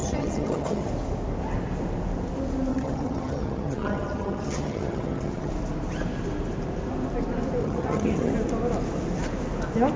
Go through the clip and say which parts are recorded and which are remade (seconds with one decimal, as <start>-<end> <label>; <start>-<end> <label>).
0.0-0.9 remade; 0.9-2.7 recorded; 2.7-5.5 remade; 5.5-7.6 recorded; 7.6-8.3 remade; 8.3-10.0 recorded